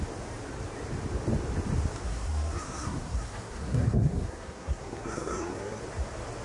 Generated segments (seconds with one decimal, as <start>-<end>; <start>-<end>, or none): 2.0-5.8